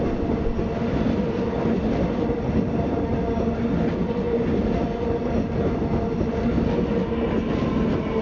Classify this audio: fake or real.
real